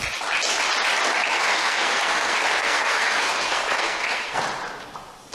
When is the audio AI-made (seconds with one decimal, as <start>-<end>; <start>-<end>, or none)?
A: 1.2-4.4